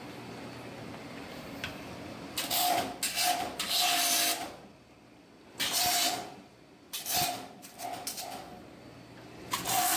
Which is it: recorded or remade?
recorded